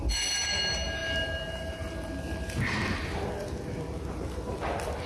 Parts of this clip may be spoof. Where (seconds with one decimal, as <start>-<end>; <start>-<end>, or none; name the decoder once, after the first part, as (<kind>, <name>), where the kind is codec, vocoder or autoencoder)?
none